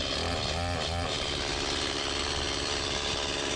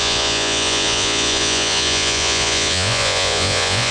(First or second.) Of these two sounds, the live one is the first